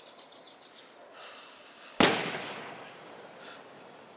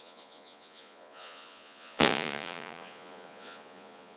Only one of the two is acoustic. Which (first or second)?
first